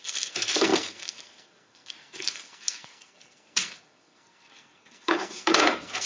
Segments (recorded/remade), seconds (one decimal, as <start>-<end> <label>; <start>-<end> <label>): 0.0-6.1 remade